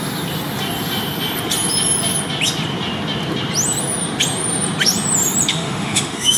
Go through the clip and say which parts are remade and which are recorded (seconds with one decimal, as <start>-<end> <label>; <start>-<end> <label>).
0.0-5.5 recorded; 5.5-6.4 remade